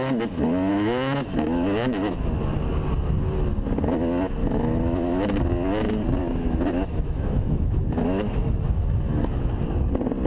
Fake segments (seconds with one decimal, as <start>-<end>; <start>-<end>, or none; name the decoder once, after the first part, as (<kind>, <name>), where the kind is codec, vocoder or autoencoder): 0.7-2.3 (autoencoder, DAC-VAE); 4.4-5.4; 6.2-9.5